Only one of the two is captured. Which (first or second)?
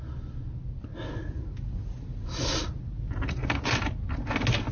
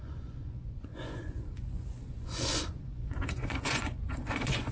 first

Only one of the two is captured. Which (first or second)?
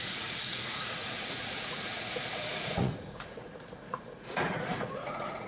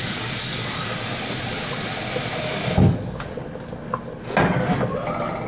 second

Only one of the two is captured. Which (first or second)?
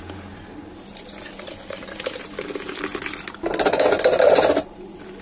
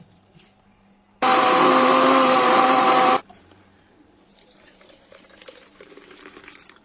first